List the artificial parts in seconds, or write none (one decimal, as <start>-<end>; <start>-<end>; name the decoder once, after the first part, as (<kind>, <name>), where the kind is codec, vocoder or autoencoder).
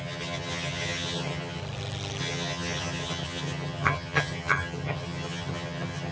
0.0-1.6 (vocoder, HiFi-GAN); 2.2-6.1